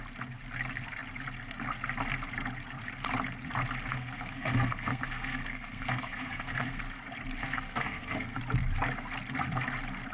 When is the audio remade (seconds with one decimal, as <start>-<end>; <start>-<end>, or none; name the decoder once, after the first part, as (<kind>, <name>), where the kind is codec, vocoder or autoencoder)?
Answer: 3.9-6.8 (codec, SNAC); 7.4-8.4